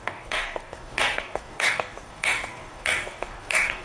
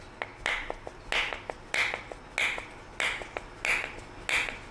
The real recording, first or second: second